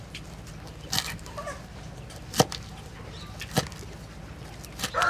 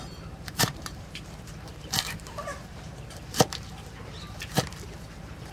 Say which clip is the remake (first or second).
second